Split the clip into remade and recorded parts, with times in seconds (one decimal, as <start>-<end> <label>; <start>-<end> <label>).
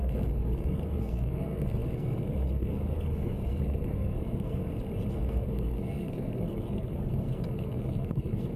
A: 0.0-4.6 remade; 4.6-5.1 recorded; 5.1-8.6 remade